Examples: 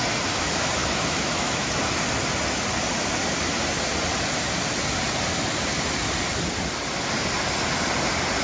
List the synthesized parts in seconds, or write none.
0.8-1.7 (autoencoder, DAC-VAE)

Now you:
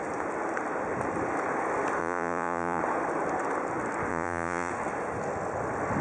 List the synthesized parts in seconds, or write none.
2.0-2.8 (vocoder, Vocos); 4.1-4.7

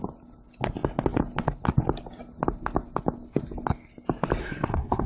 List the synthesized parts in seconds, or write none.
4.4-5.1 (codec, SNAC)

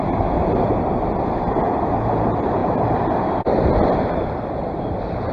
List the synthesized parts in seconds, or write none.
none

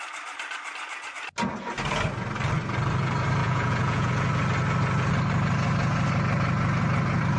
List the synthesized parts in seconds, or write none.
3.4-4.1 (vocoder, Vocos)